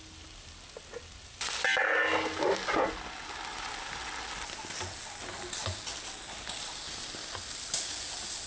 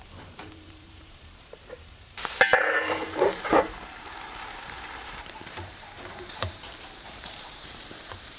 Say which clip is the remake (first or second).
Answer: second